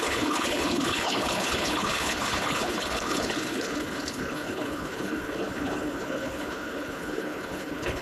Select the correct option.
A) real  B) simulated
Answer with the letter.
B